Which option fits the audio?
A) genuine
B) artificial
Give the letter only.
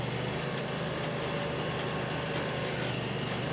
A